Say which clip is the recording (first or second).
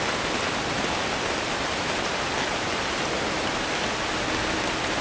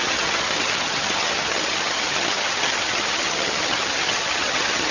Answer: first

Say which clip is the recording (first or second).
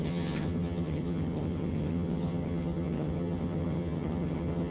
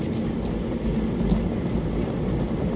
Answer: second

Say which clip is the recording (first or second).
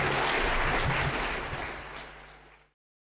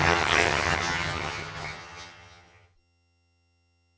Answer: first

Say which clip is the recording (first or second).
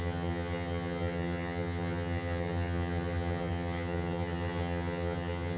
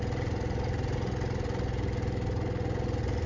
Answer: second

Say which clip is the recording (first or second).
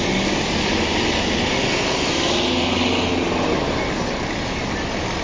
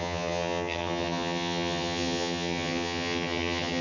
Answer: first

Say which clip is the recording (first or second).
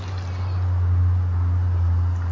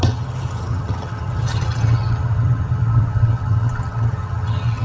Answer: first